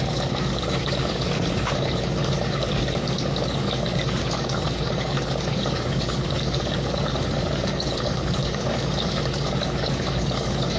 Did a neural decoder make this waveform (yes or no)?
yes